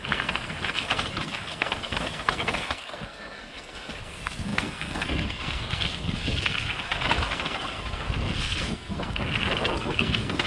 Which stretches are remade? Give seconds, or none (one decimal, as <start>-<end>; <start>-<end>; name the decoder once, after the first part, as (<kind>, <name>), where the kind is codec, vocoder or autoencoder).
0.0-10.5 (codec, SNAC)